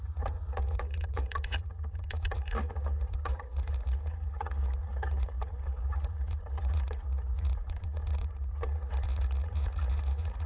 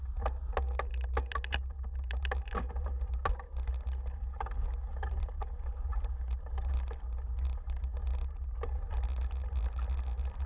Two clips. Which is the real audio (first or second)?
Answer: second